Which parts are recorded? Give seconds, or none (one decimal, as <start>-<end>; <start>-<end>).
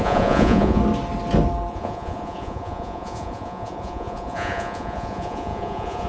0.8-1.7